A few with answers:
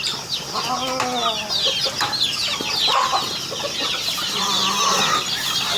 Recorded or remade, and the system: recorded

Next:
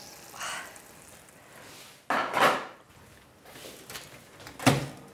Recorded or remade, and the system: recorded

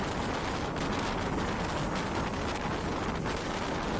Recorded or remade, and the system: recorded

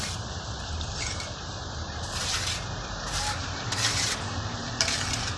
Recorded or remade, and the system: remade, vocoder, BigVGAN v2